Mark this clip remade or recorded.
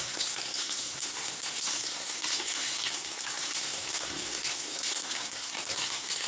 remade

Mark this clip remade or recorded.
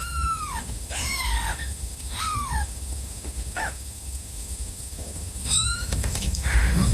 remade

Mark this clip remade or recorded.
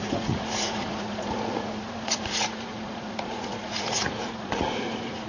remade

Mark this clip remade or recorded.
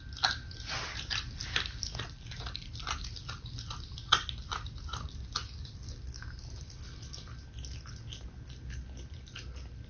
recorded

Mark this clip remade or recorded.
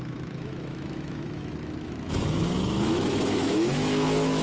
remade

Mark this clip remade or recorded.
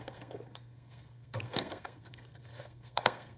remade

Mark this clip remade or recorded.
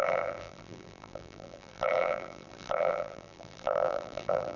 remade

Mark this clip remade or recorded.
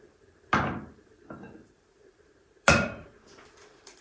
remade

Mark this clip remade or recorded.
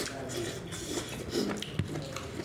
recorded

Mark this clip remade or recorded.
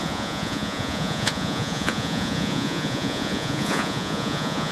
remade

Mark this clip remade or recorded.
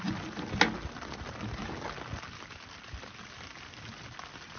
recorded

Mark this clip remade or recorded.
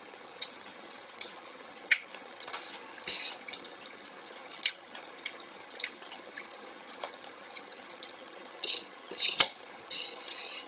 remade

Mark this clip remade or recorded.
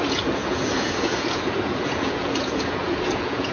remade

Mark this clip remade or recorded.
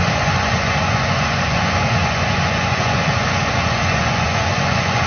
remade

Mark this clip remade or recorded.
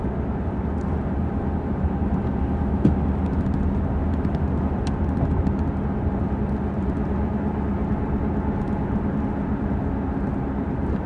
recorded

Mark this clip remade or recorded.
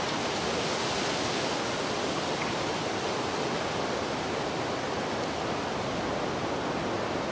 recorded